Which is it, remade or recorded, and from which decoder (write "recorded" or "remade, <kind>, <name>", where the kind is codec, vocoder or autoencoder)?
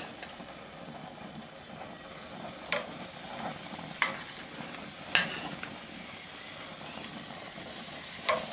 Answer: recorded